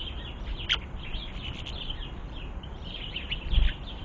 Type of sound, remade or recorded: recorded